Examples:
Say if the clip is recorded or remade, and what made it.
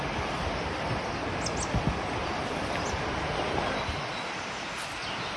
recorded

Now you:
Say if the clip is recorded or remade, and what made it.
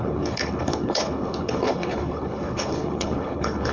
remade, codec, HILCodec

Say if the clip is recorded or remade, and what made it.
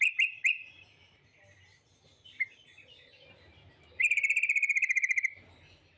recorded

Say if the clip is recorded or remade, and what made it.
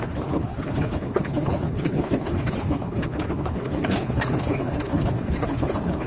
remade, codec, HILCodec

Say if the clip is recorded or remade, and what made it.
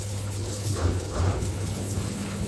remade, codec, HILCodec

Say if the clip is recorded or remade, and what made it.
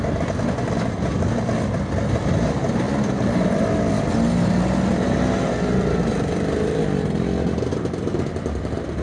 recorded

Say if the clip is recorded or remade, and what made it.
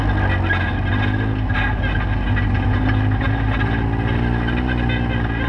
recorded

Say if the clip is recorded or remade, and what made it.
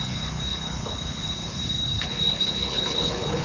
remade, codec, HILCodec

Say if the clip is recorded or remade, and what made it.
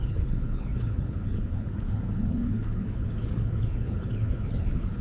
remade, codec, HILCodec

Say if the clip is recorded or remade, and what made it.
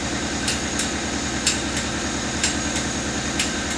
recorded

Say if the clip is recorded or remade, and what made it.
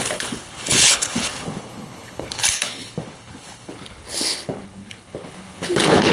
remade, codec, HILCodec